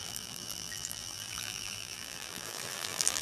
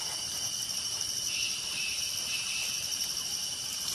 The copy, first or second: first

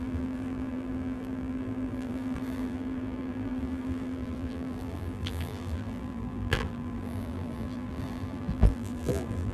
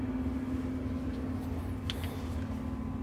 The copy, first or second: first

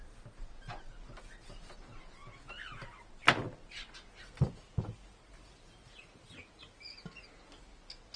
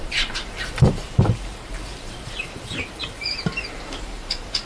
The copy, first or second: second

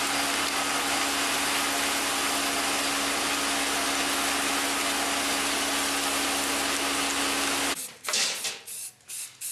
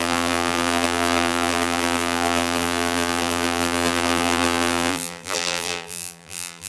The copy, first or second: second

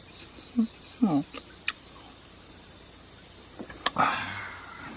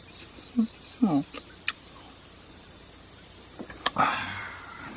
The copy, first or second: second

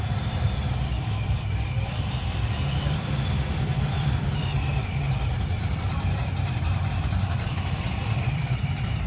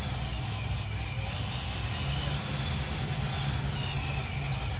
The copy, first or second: first